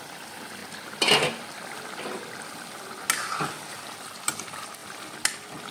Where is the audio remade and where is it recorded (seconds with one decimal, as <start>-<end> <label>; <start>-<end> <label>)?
0.0-0.6 remade; 0.6-4.0 recorded; 4.0-4.8 remade; 4.8-5.7 recorded